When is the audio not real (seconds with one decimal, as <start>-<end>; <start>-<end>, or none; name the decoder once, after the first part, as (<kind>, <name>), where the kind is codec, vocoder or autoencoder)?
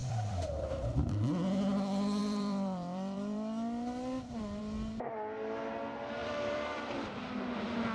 0.0-1.1 (vocoder, BigVGAN v2); 2.2-4.6; 6.2-7.2